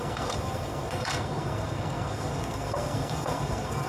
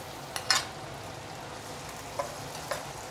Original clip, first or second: second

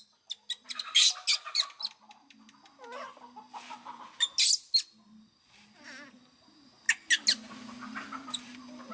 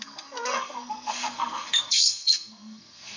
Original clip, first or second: first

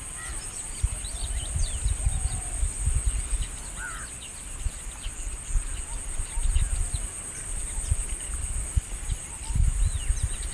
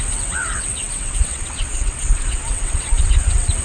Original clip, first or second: first